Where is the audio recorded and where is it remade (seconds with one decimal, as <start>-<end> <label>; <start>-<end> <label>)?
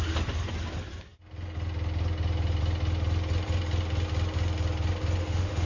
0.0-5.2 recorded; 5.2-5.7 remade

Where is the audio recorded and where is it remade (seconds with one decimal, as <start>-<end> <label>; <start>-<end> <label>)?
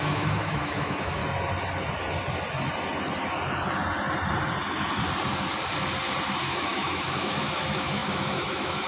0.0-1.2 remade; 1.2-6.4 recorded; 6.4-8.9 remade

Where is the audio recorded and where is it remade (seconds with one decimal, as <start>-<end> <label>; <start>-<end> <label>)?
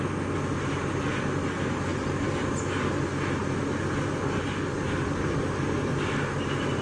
0.0-6.8 recorded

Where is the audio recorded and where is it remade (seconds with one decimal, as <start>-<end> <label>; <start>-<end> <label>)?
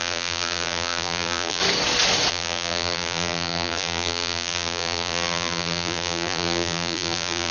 0.0-1.6 remade; 1.6-2.3 recorded; 2.3-7.5 remade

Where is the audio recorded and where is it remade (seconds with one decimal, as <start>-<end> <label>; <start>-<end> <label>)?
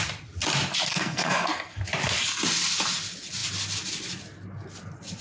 0.0-0.9 recorded; 0.9-1.8 remade; 1.8-5.2 recorded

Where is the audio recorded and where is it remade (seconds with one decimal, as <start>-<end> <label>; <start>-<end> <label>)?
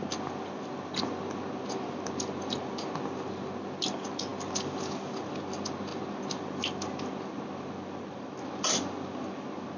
0.0-9.8 recorded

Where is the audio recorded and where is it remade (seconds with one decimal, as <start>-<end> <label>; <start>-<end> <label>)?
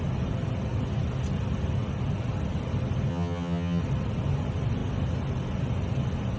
0.0-3.1 recorded; 3.1-3.8 remade; 3.8-6.4 recorded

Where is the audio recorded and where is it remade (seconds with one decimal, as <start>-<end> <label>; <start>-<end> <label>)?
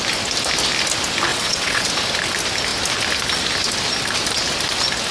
0.0-1.3 recorded; 1.3-1.9 remade; 1.9-5.1 recorded